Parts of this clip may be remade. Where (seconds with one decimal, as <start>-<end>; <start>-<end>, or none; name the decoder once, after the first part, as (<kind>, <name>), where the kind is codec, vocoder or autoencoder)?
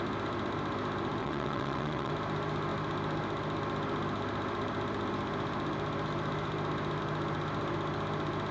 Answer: 1.2-2.1 (vocoder, WaveNeXt)